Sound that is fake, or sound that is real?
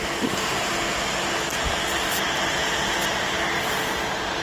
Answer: real